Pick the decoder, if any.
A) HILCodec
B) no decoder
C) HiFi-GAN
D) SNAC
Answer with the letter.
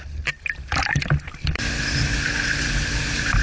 B